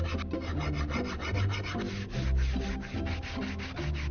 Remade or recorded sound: recorded